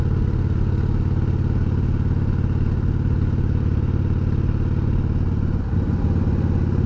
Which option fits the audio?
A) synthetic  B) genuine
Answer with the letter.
B